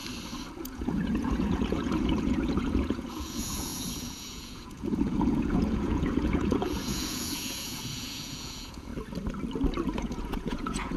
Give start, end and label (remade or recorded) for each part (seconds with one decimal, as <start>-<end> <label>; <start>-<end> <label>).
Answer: 0.0-0.6 recorded; 0.6-8.9 remade; 8.9-10.0 recorded; 10.0-11.0 remade